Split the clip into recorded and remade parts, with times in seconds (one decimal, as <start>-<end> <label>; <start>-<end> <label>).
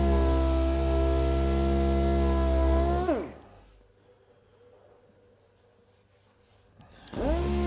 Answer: 0.0-7.7 recorded